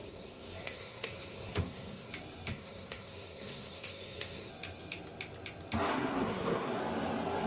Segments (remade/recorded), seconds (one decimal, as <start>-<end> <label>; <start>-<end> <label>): 0.0-2.1 remade; 2.1-2.5 recorded; 2.5-4.5 remade; 4.5-5.9 recorded; 5.9-6.8 remade; 6.8-7.5 recorded